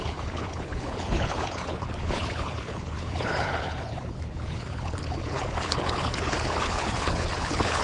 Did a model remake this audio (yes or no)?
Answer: yes